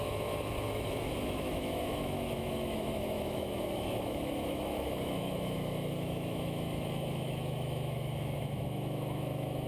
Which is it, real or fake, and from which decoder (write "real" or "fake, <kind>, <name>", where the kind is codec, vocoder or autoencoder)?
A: fake, autoencoder, DAC-VAE